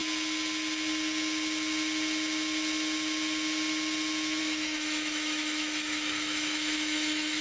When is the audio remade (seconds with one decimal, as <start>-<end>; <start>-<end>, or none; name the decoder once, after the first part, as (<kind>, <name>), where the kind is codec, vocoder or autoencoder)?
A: 4.4-7.4 (autoencoder, DAC-VAE)